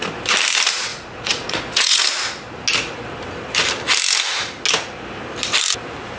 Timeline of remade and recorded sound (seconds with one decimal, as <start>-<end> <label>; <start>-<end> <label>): 0.0-0.9 recorded; 0.9-2.0 remade; 2.0-6.2 recorded